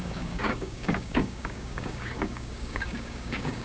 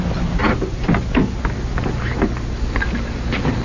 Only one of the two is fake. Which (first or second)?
first